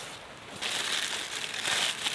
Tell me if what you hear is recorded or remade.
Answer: recorded